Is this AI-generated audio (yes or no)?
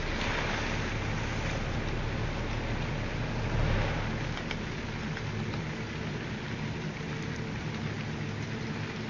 no